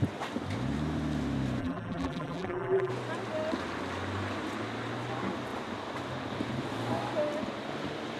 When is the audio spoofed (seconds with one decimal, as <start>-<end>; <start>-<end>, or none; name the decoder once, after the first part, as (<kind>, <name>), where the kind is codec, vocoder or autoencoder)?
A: 1.6-2.9 (vocoder, BigVGAN v2)